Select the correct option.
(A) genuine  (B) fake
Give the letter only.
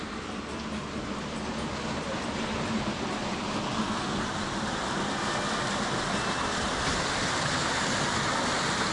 A